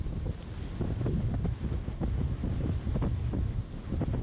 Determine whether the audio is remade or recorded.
recorded